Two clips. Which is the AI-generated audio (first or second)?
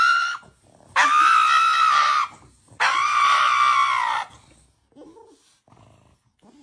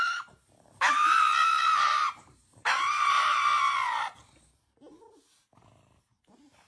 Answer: second